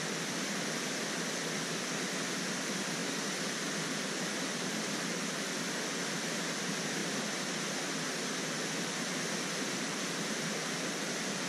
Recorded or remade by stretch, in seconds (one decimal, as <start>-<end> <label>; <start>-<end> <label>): 0.0-3.0 remade; 3.0-3.9 recorded; 3.9-7.0 remade; 7.0-8.8 recorded; 8.8-11.5 remade